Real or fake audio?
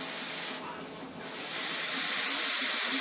real